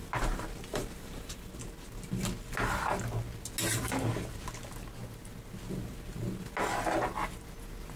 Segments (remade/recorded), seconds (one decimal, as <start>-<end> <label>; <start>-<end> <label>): 0.0-0.7 recorded; 0.7-1.5 remade; 1.5-8.0 recorded